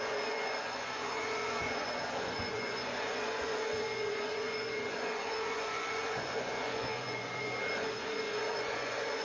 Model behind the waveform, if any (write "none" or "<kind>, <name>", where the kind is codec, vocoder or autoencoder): vocoder, Vocos